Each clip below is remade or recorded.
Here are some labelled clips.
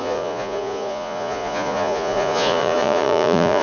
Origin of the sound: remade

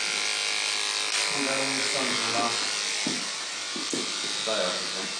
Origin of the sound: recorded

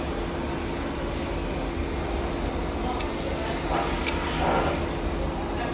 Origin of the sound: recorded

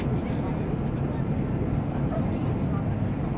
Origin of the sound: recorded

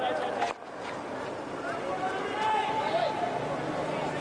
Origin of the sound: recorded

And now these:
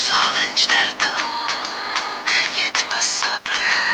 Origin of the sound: recorded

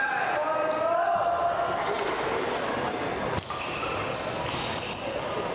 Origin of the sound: recorded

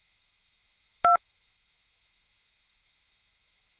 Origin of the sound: remade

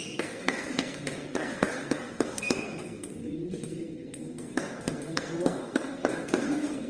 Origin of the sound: remade